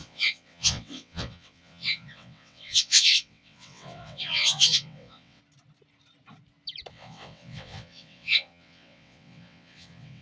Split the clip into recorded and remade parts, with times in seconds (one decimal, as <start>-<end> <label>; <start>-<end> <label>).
0.0-5.4 remade; 5.4-6.9 recorded; 6.9-10.2 remade